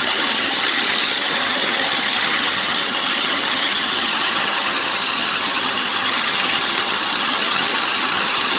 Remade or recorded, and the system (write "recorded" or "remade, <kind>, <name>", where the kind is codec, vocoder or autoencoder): remade, vocoder, HiFi-GAN